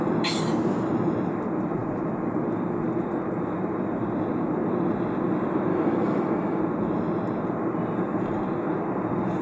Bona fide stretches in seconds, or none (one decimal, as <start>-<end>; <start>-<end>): 0.0-5.7; 6.6-9.4